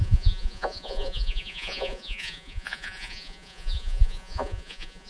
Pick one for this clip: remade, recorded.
remade